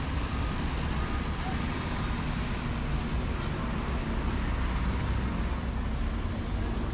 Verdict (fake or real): real